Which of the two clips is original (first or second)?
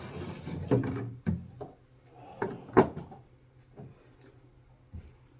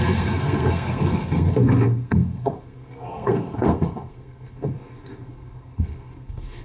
first